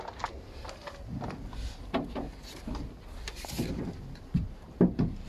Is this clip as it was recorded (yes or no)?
yes